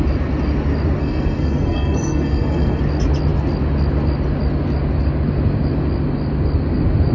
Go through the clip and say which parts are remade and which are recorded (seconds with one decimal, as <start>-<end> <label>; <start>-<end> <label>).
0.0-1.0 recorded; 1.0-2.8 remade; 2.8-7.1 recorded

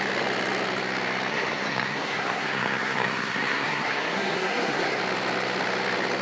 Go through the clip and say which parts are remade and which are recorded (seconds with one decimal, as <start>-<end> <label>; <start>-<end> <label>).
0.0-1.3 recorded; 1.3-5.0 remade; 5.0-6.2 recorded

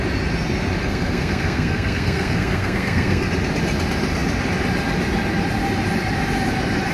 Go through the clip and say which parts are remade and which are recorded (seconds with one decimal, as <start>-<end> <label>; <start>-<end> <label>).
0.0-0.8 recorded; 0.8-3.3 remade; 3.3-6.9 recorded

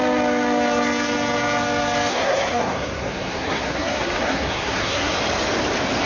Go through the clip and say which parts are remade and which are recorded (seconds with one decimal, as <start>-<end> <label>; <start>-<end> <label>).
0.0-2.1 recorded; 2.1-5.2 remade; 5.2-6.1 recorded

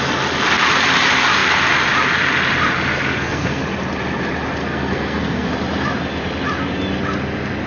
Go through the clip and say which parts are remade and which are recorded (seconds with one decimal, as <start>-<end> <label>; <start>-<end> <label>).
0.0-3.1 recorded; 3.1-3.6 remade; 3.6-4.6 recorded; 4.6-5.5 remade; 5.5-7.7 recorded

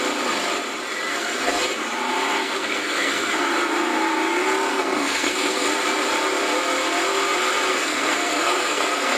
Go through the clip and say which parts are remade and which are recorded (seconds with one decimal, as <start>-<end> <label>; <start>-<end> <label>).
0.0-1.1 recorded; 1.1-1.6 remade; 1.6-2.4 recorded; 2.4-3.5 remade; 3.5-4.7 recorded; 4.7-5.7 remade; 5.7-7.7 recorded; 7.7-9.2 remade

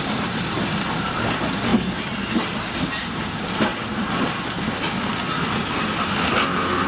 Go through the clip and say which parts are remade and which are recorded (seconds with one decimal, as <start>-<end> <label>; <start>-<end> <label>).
0.0-6.9 recorded